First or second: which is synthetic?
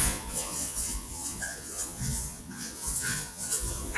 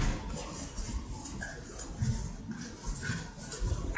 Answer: first